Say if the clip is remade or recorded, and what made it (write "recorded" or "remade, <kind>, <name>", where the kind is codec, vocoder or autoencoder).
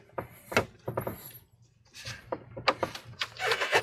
recorded